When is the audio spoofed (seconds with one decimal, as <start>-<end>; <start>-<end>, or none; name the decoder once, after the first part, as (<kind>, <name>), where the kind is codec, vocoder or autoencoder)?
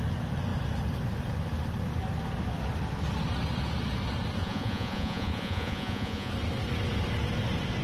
4.4-6.3 (vocoder, Vocos)